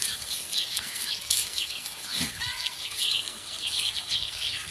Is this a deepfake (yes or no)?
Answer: yes